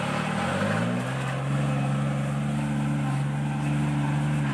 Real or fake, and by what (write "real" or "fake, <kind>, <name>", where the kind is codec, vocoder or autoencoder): real